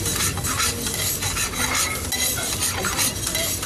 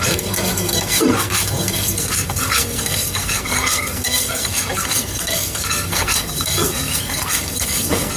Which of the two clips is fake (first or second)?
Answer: second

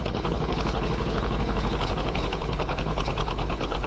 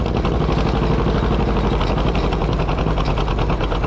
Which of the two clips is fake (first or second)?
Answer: first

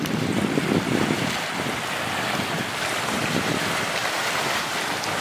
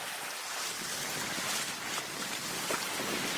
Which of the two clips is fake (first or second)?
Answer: first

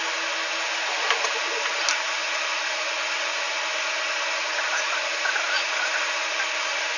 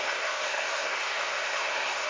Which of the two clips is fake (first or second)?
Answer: second